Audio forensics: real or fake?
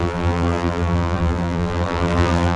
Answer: fake